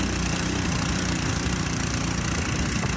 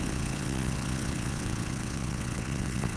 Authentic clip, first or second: first